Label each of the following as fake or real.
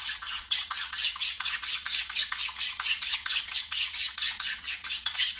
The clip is fake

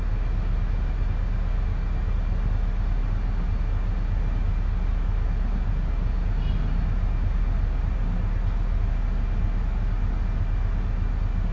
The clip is real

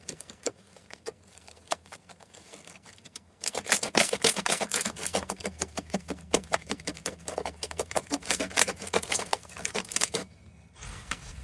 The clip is fake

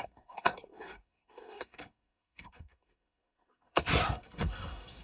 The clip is fake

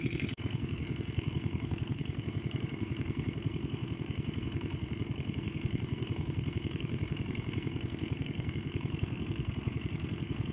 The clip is fake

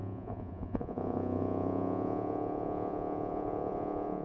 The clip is fake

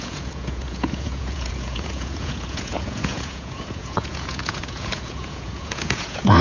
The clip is fake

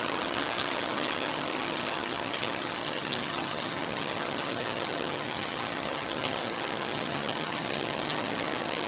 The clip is fake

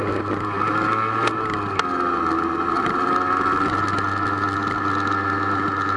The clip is real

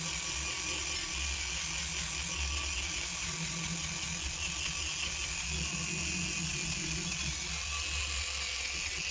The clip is real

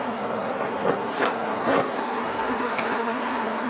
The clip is fake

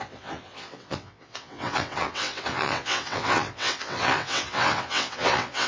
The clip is fake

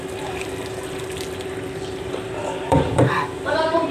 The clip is fake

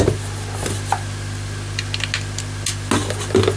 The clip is real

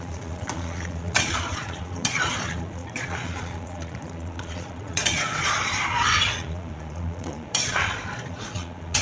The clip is fake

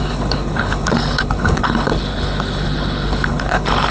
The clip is fake